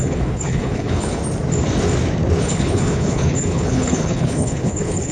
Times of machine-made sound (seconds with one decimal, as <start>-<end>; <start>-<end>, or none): 0.0-1.2; 2.4-5.1